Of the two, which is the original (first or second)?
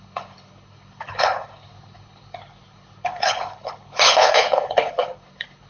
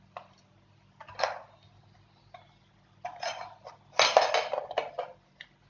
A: second